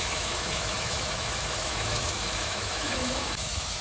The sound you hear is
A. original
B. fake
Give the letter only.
B